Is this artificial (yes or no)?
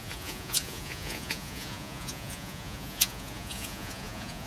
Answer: yes